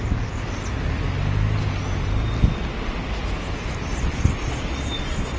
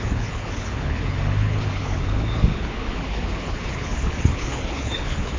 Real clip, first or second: first